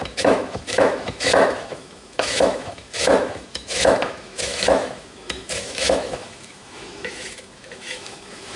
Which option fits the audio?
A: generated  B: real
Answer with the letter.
A